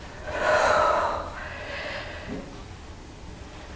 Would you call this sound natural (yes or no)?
yes